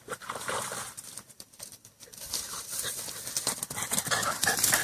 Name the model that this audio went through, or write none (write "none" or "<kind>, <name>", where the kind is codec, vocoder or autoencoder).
vocoder, BigVGAN v2